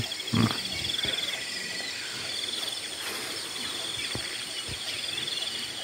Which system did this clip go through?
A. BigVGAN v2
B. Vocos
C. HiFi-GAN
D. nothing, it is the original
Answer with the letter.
D